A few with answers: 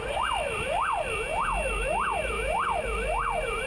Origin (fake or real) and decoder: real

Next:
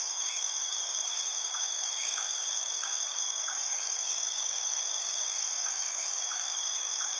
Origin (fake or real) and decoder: fake, codec, DAC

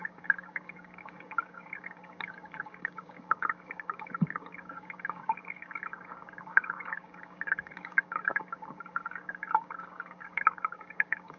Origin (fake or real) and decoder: fake, codec, DAC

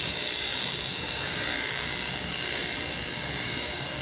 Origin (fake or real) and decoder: fake, codec, DAC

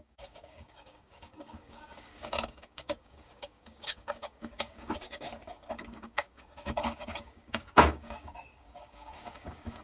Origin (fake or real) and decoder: fake, codec, DAC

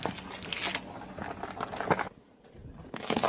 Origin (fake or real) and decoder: real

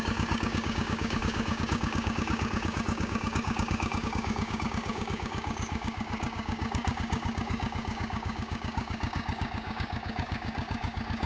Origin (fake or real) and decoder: fake, codec, DAC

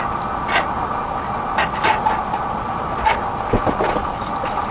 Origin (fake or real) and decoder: real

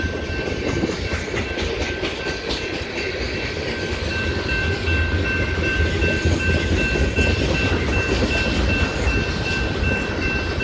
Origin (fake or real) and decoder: real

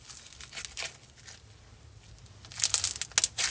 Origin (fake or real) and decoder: real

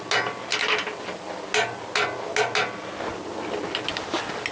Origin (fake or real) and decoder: real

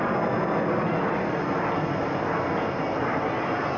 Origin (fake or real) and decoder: real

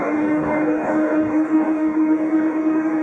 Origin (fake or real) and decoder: fake, codec, DAC